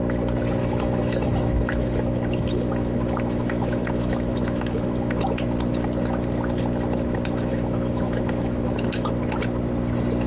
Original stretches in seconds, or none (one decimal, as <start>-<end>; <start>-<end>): 0.0-0.6; 5.2-7.5; 9.1-10.3